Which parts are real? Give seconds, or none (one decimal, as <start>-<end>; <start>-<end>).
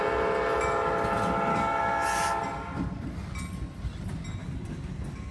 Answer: 0.0-1.5; 2.2-4.4